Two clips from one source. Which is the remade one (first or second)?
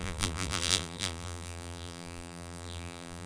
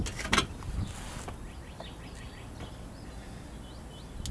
first